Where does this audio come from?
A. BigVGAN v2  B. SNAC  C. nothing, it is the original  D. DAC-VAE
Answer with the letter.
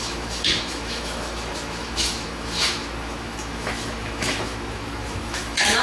D